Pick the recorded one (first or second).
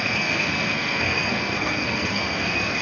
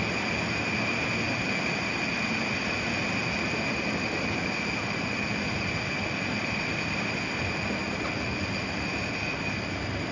second